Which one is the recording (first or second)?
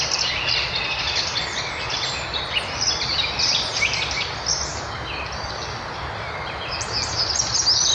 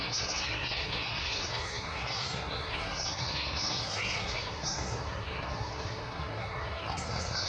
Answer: first